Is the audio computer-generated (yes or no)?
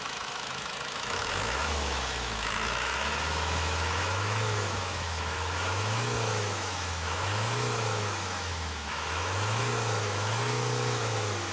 yes